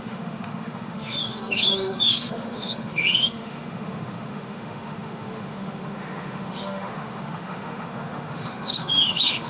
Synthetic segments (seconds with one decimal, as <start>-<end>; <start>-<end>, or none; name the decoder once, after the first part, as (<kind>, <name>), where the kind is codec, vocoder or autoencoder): 0.0-9.5 (autoencoder, DAC-VAE)